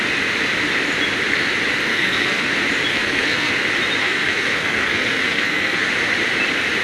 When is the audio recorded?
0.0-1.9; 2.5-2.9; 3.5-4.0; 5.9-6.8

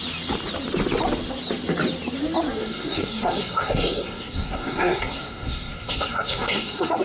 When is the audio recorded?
0.0-2.6

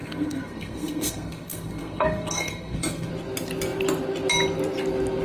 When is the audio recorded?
3.1-5.2

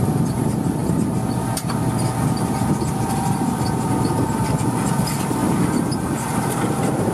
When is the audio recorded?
0.0-7.1